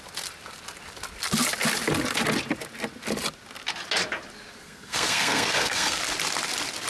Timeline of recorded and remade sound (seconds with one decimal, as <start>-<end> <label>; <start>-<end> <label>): 0.0-4.6 recorded; 4.6-6.0 remade; 6.0-6.9 recorded